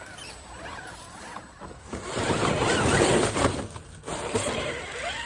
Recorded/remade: recorded